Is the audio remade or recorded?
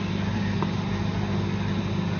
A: recorded